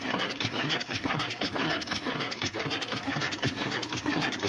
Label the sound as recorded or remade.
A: remade